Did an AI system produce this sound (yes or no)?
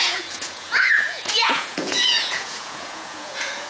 yes